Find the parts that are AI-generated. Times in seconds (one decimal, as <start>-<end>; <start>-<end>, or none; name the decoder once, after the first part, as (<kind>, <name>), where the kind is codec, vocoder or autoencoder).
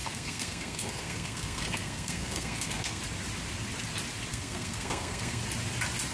0.0-3.0 (codec, SNAC); 4.3-5.4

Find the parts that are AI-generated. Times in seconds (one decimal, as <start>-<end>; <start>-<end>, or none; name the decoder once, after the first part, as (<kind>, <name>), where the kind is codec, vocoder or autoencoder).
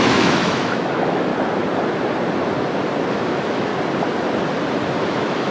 0.0-1.3 (autoencoder, DAC-VAE); 3.1-3.7; 5.0-5.5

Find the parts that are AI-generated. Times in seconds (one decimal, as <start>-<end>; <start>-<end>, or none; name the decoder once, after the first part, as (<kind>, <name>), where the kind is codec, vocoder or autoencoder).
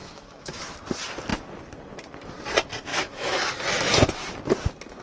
0.0-0.6 (autoencoder, DAC-VAE); 2.9-3.5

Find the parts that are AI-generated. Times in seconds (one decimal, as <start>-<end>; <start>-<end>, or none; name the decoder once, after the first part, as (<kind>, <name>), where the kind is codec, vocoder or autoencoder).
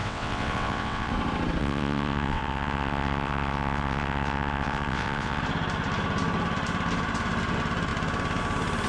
0.0-1.1 (vocoder, WaveNeXt); 1.6-5.4